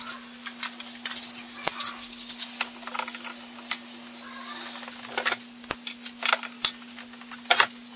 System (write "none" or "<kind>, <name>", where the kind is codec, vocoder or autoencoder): none